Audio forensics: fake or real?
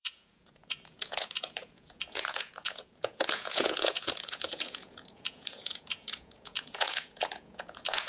fake